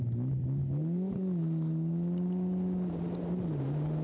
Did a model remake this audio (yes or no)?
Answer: no